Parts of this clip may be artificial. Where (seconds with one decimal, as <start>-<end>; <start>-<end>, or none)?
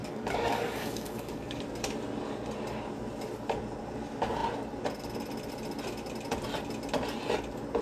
0.0-1.6